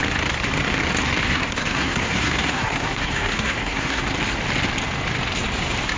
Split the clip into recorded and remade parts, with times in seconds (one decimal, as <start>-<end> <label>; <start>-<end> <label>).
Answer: 0.0-1.2 recorded; 1.2-4.0 remade; 4.0-6.0 recorded